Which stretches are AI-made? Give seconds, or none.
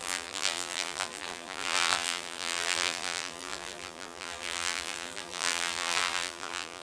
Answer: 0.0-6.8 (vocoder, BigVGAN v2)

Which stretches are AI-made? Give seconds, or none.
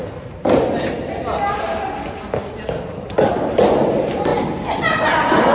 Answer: none